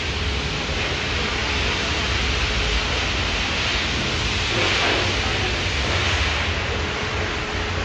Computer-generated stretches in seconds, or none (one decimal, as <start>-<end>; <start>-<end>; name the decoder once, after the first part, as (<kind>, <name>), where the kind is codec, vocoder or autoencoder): none